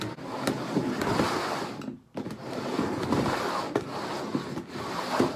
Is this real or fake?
real